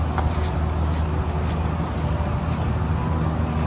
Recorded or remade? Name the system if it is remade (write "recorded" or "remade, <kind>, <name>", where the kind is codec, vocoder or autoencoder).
recorded